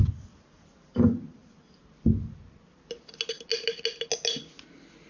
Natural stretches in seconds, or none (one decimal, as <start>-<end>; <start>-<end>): 0.0-5.1